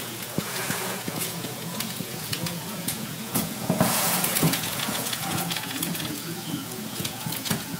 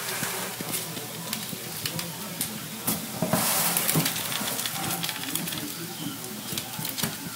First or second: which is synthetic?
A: first